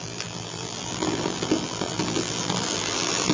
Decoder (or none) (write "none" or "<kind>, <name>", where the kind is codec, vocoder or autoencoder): vocoder, BigVGAN v2